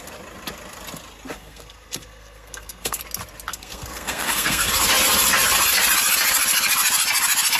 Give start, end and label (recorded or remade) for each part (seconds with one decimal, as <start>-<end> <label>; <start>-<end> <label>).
0.0-1.3 recorded; 1.3-3.0 remade; 3.0-3.5 recorded; 3.5-4.7 remade; 4.7-7.6 recorded